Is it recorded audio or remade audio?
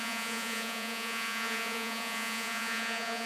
remade